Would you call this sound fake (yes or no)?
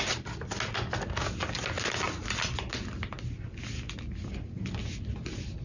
no